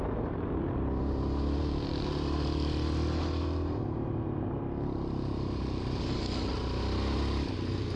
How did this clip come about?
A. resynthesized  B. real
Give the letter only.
B